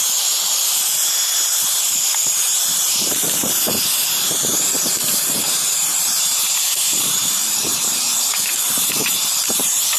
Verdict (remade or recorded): remade